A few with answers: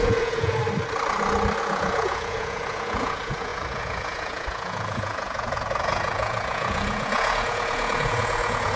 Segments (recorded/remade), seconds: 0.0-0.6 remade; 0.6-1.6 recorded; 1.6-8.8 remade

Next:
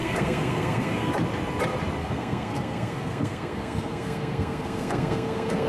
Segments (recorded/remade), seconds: 0.0-1.1 remade; 1.1-2.0 recorded; 2.0-5.7 remade

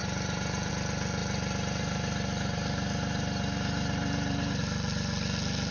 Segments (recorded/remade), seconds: 0.0-0.7 remade; 0.7-1.2 recorded; 1.2-4.6 remade; 4.6-5.7 recorded

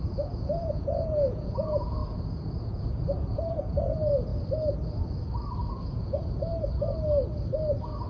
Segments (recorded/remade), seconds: 0.0-4.3 remade; 4.3-5.7 recorded; 5.7-6.5 remade; 6.5-8.1 recorded

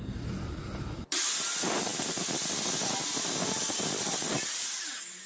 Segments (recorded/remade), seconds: 0.0-5.3 remade